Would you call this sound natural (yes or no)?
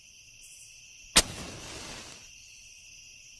yes